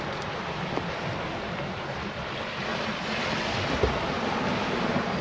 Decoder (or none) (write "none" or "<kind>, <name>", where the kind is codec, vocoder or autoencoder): none